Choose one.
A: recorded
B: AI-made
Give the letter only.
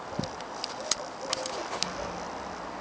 A